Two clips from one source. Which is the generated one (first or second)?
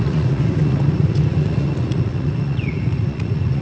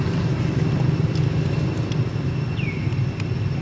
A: first